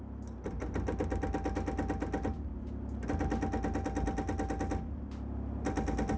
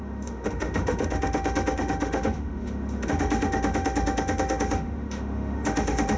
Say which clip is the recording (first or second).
first